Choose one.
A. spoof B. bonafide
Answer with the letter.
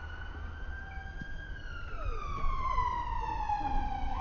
B